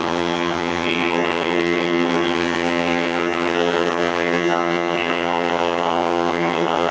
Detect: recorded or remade remade